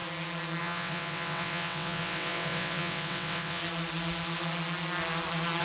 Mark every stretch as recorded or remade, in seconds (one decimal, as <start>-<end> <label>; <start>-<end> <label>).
0.0-0.6 recorded; 0.6-3.6 remade; 3.6-5.6 recorded